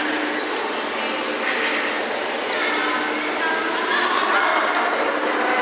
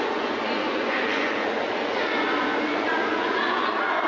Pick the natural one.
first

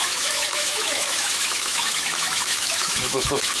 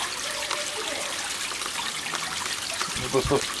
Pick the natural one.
second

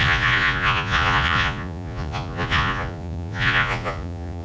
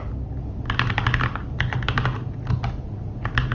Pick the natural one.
second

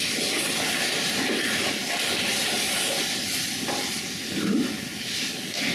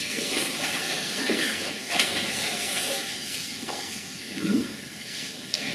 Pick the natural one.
first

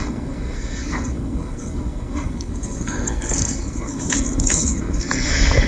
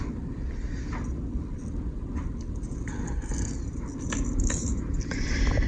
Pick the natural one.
second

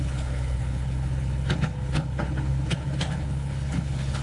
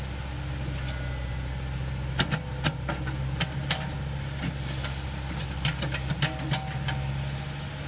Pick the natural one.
second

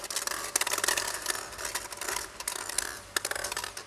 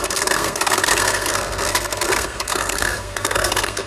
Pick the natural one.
first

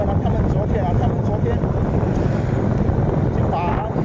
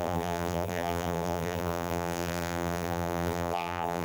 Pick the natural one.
first